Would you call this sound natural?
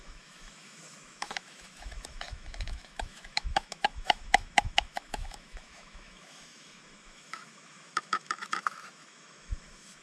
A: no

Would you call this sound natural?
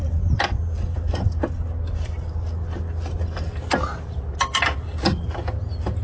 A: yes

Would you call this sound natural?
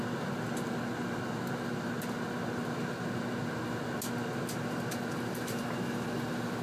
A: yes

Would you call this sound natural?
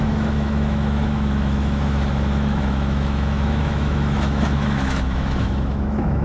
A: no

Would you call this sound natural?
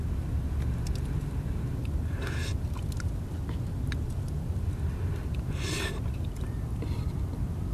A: yes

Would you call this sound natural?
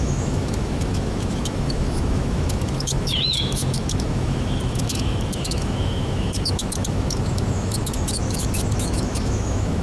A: no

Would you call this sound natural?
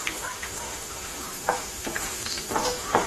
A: no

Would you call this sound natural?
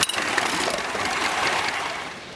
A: yes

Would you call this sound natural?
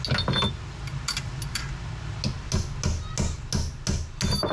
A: yes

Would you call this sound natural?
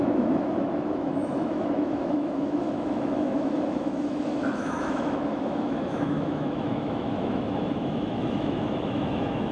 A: no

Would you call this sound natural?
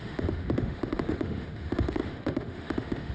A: no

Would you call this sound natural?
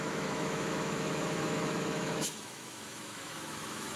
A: no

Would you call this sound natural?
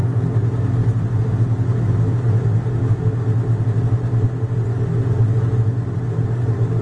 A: yes